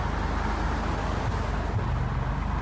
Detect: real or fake real